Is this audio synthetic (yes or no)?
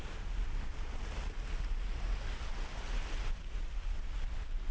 no